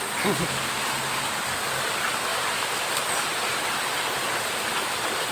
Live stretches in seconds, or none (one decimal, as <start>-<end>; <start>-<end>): 0.0-5.3